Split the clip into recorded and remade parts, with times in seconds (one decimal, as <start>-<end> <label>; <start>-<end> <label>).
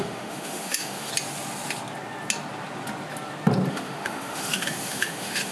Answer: 0.0-1.1 remade; 1.1-3.7 recorded; 3.7-5.5 remade